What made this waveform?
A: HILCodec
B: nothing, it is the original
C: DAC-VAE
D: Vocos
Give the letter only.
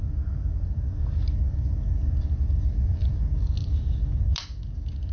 B